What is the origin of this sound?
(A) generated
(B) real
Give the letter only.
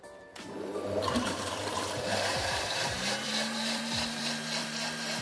A